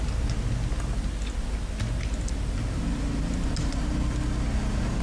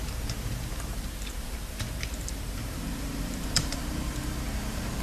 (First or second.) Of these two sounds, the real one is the first